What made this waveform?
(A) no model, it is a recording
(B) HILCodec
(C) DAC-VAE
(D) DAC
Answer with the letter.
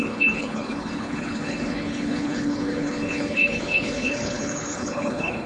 B